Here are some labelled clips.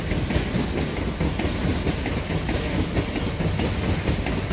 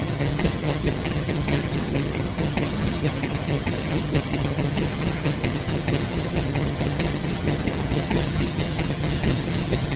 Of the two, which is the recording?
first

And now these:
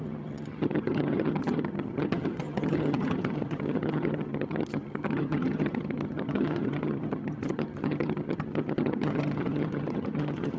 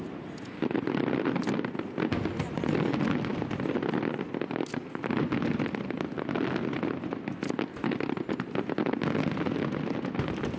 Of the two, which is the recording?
second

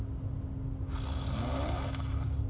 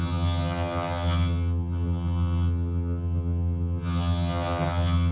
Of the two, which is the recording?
first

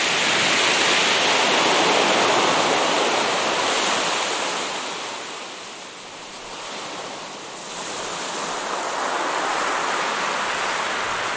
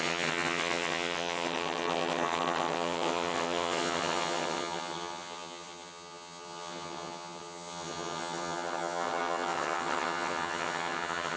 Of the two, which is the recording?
first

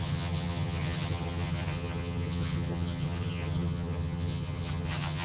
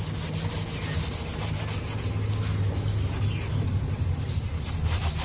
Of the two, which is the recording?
second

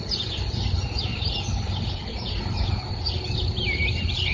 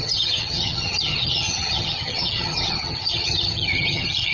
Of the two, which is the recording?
first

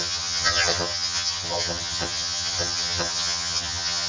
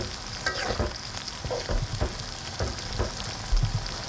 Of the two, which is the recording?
second